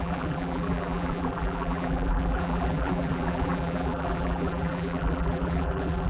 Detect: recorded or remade remade